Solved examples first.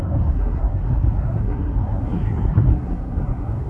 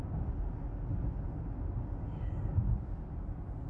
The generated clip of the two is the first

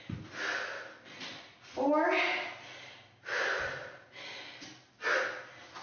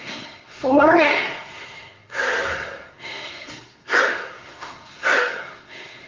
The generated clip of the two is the second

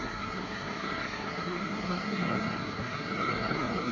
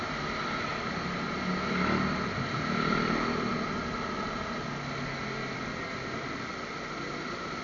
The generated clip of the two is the first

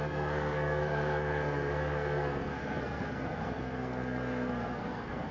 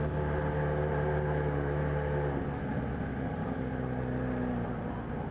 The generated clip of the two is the first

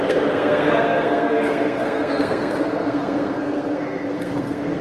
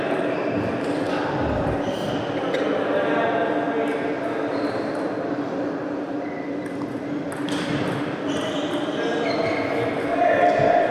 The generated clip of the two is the first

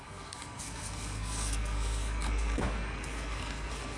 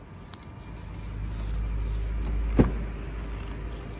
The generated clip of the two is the first